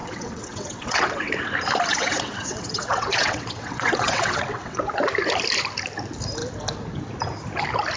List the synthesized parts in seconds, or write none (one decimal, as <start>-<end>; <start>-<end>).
0.0-1.3; 1.9-4.8